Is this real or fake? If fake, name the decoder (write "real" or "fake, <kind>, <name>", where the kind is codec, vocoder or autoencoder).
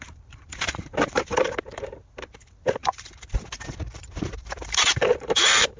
fake, vocoder, BigVGAN v2